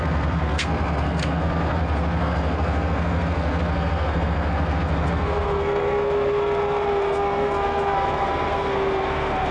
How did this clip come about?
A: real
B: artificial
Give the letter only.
B